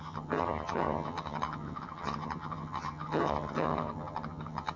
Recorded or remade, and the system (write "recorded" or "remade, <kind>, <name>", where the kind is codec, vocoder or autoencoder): remade, vocoder, HiFi-GAN